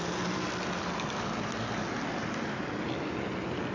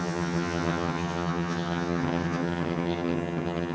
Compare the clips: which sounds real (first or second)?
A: first